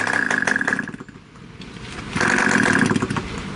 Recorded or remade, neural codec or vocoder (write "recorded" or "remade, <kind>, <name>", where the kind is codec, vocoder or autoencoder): recorded